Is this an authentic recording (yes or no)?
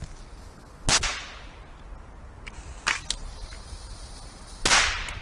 yes